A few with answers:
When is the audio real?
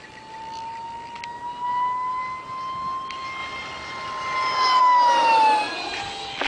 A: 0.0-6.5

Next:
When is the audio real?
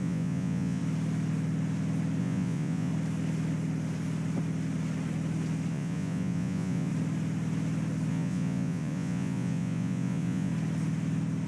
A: 0.8-2.2; 2.9-5.7; 6.9-8.1; 10.5-11.5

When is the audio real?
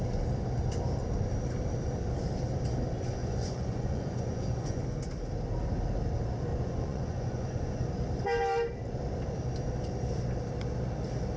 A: 0.0-3.2; 4.8-6.5; 7.9-11.4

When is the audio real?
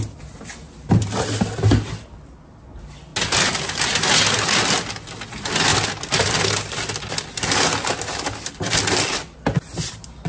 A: 0.0-10.3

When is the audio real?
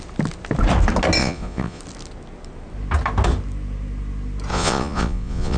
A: 0.0-1.2; 1.8-4.5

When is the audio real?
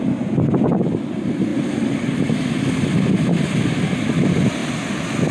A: 0.0-5.3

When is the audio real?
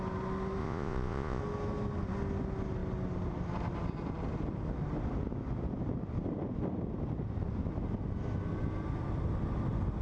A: 0.0-0.6; 1.4-10.0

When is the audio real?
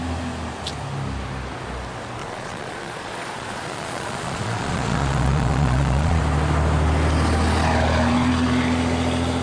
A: 0.0-2.2; 6.2-9.4